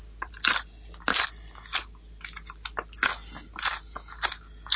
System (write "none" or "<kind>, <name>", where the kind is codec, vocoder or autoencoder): none